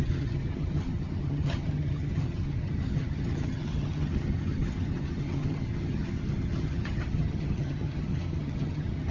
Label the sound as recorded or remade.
remade